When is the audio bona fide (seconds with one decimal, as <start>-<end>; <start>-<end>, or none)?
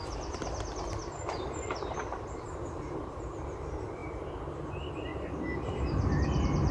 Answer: 0.0-6.7